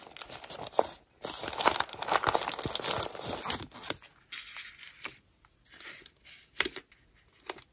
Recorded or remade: recorded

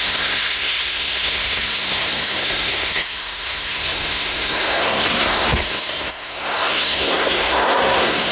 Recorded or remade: remade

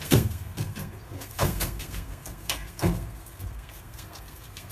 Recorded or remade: remade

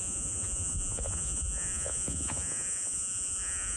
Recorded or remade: remade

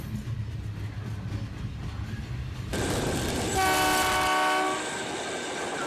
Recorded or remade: recorded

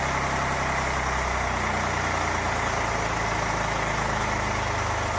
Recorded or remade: recorded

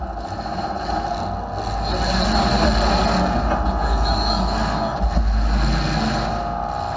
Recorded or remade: recorded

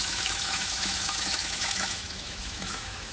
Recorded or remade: remade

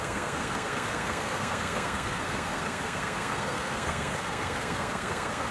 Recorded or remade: remade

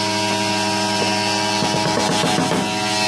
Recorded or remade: recorded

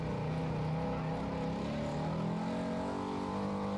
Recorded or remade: recorded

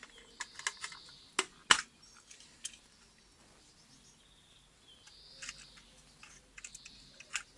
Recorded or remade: recorded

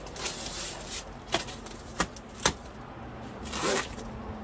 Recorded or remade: recorded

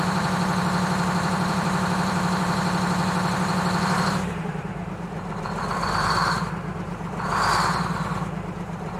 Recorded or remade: remade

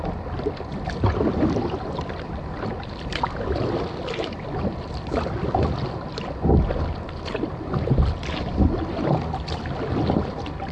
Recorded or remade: recorded